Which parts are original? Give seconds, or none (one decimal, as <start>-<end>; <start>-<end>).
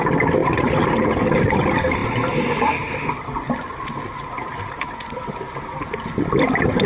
0.0-0.4; 1.4-6.9